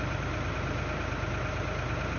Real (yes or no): yes